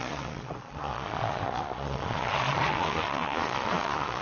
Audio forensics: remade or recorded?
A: remade